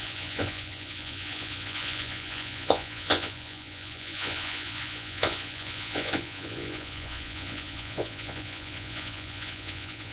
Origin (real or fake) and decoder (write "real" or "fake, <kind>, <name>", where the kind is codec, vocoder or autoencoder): fake, vocoder, Vocos